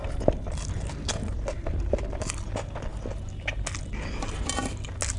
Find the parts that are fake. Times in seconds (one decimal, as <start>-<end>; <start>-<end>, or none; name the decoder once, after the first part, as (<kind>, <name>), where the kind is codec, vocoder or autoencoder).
none